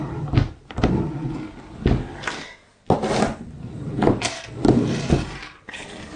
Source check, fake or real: real